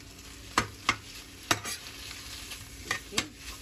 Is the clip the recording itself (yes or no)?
yes